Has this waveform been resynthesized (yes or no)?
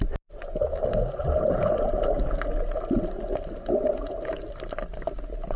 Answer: no